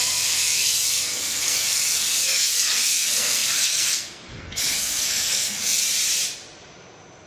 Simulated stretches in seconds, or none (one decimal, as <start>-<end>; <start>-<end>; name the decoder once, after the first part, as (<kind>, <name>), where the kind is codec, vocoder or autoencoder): 0.0-5.8 (codec, SNAC)

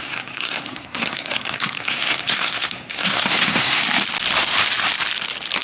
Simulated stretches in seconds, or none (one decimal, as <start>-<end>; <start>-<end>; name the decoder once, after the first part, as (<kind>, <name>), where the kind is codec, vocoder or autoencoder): 0.0-3.8 (codec, SNAC)

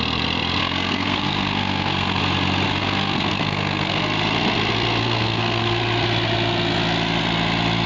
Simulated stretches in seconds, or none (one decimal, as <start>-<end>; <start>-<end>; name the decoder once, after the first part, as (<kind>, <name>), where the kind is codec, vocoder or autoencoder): 0.6-2.2 (codec, SNAC); 2.7-4.0; 5.0-5.8

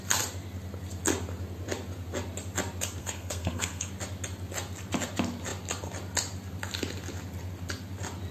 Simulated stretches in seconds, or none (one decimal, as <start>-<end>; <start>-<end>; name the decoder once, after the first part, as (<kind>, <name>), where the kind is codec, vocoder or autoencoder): 3.0-3.9 (codec, SNAC)

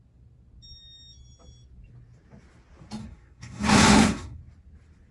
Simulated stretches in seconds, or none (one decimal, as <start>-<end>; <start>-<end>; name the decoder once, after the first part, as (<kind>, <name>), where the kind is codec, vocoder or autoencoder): 3.0-4.4 (codec, SNAC)

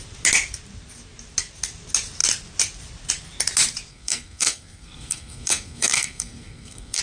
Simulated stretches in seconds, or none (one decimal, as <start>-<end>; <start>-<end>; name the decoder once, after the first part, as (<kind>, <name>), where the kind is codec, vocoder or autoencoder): 3.9-7.0 (codec, SNAC)

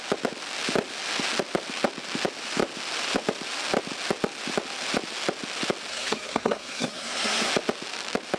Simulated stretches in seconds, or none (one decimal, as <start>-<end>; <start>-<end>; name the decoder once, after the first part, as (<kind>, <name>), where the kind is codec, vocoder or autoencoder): 5.9-7.5 (codec, SNAC)